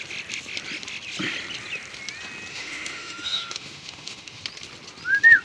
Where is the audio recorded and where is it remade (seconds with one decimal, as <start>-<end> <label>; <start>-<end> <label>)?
0.0-2.5 recorded; 2.5-4.4 remade; 4.4-5.4 recorded